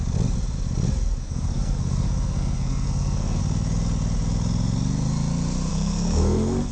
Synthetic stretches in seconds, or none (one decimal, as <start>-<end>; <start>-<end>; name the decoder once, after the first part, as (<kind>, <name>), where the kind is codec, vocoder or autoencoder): 1.2-3.4 (codec, SNAC); 5.7-6.7